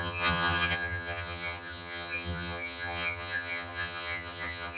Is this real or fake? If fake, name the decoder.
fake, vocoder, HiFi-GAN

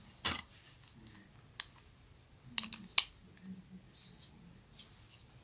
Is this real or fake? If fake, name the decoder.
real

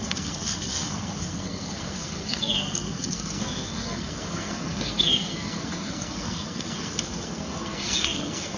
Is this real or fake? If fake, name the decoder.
fake, codec, SNAC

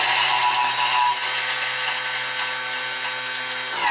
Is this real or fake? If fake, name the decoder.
real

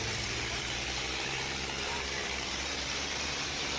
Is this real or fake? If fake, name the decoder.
fake, vocoder, BigVGAN v2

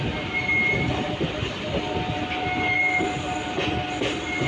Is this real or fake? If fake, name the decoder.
real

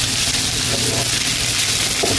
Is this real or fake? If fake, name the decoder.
real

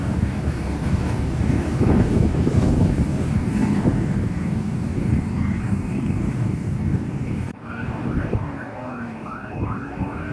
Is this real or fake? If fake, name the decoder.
fake, codec, DAC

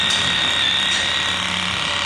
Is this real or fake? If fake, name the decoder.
real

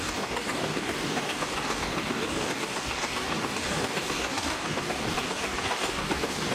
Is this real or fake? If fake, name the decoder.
fake, codec, DAC